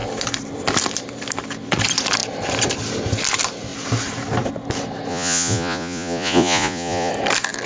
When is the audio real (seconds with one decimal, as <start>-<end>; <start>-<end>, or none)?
0.0-5.1; 7.1-7.7